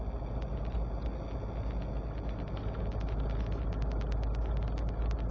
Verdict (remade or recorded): recorded